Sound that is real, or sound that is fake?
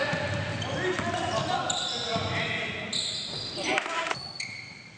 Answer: real